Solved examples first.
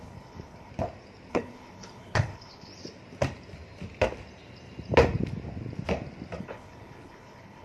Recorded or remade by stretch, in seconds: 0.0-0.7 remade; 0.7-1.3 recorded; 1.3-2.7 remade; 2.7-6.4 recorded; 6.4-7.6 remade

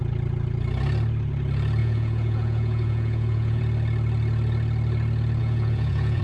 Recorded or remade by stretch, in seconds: 0.0-1.8 recorded; 1.8-3.6 remade; 3.6-5.4 recorded; 5.4-6.2 remade

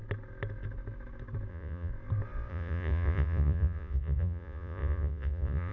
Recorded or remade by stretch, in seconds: 0.0-1.5 recorded; 1.5-1.9 remade; 1.9-2.5 recorded; 2.5-5.7 remade

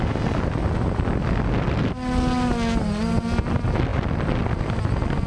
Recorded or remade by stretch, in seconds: 0.0-5.3 recorded

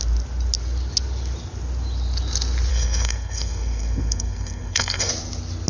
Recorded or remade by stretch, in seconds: 0.0-2.7 recorded; 2.7-5.1 remade; 5.1-5.7 recorded

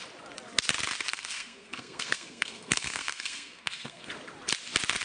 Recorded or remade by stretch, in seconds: 0.0-1.1 recorded; 1.1-4.1 remade; 4.1-5.0 recorded

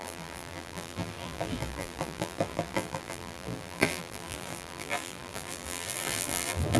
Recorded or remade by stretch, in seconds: 0.0-6.8 remade

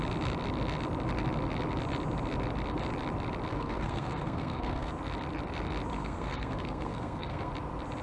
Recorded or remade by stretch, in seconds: 0.0-3.5 recorded; 3.5-4.9 remade; 4.9-5.9 recorded; 5.9-7.5 remade; 7.5-8.0 recorded